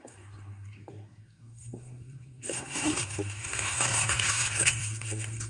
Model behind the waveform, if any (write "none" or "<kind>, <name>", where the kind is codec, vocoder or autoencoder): codec, SNAC